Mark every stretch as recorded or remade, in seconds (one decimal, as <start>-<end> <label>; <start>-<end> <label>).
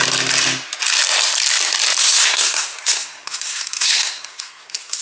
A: 0.0-2.0 recorded; 2.0-5.0 remade